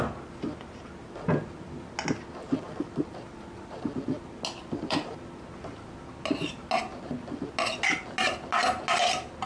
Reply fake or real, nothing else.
real